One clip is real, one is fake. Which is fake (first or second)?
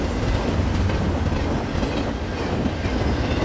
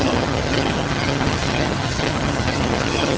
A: second